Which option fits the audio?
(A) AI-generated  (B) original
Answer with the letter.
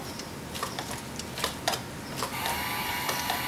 B